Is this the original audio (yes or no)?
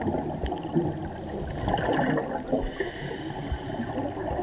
yes